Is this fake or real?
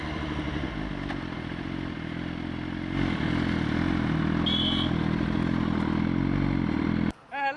real